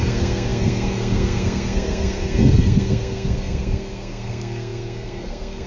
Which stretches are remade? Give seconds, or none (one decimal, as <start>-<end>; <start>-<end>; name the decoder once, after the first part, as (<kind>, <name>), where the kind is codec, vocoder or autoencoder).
0.0-5.7 (codec, SNAC)